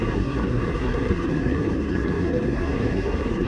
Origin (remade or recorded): remade